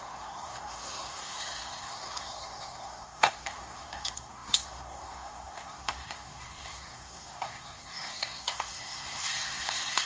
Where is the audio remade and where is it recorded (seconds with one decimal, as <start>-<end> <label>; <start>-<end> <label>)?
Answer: 0.0-10.1 remade

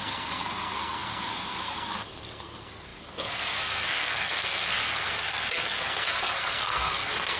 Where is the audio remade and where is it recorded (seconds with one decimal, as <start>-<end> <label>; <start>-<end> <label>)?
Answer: 0.0-7.4 remade